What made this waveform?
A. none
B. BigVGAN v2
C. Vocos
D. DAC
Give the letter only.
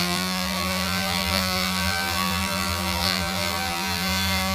B